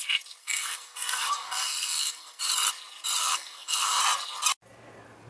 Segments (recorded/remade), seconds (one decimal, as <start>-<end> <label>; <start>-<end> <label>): 0.0-0.4 recorded; 0.4-2.4 remade; 2.4-3.2 recorded; 3.2-4.0 remade; 4.0-5.3 recorded

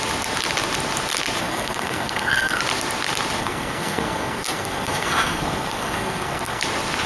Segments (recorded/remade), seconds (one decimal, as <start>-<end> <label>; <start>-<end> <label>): 0.0-1.4 recorded; 1.4-2.6 remade; 2.6-3.4 recorded; 3.4-6.6 remade; 6.6-7.1 recorded

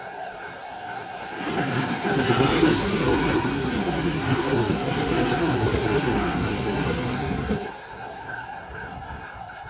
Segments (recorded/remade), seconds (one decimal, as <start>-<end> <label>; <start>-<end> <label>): 0.0-9.7 remade

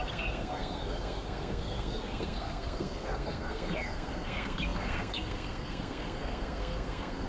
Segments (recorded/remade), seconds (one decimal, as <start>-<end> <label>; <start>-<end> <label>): 0.0-7.3 remade

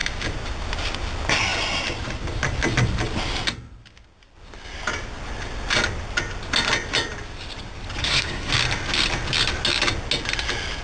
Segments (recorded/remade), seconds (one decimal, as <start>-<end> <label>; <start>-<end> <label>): 0.0-8.0 recorded; 8.0-8.5 remade; 8.5-10.8 recorded

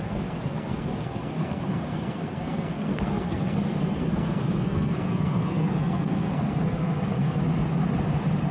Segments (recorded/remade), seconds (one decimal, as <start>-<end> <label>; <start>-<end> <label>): 0.0-7.4 remade; 7.4-8.5 recorded